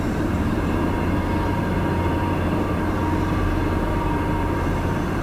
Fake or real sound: fake